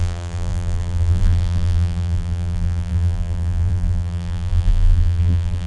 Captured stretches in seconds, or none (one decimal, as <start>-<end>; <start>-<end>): none

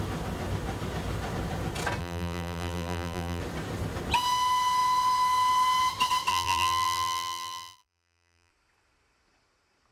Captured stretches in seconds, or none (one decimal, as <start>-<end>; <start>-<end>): 0.0-2.0; 3.4-6.3; 8.5-9.9

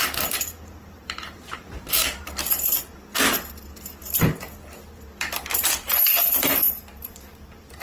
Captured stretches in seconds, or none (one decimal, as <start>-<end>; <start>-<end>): 2.0-2.5

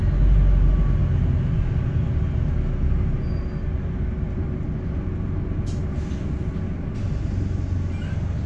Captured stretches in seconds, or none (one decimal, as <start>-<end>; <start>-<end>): 0.0-8.5

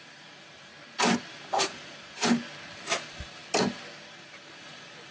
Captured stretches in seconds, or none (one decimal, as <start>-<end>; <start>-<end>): 0.7-1.3; 2.4-3.0; 3.4-4.1